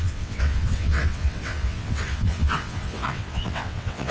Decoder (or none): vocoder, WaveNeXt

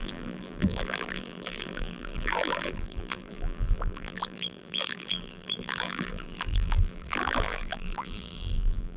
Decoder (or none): vocoder, BigVGAN v2